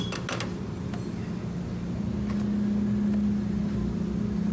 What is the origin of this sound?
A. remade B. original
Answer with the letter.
B